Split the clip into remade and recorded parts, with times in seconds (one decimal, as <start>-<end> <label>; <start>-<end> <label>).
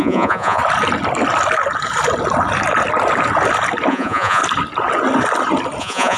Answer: 0.0-0.6 remade; 0.6-3.9 recorded; 3.9-4.4 remade; 4.4-5.8 recorded; 5.8-6.2 remade